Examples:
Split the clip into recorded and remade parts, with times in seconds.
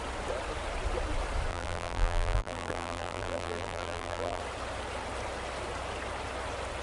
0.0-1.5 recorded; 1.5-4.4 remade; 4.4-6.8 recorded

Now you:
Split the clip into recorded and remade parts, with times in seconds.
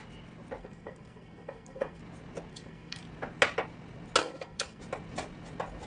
0.0-0.6 recorded; 0.6-2.0 remade; 2.0-2.5 recorded; 2.5-3.0 remade; 3.0-4.2 recorded; 4.2-4.8 remade; 4.8-5.9 recorded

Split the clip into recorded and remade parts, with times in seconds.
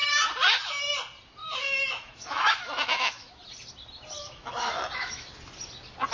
0.0-1.4 recorded; 1.4-3.4 remade; 3.4-4.2 recorded; 4.2-5.3 remade; 5.3-6.1 recorded